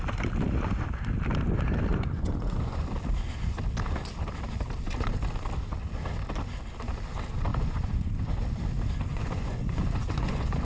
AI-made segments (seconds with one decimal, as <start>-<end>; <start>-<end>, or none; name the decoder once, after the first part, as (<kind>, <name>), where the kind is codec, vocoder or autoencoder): 1.9-2.9 (vocoder, Vocos); 7.5-8.1; 9.1-10.6